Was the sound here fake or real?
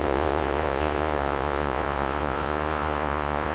fake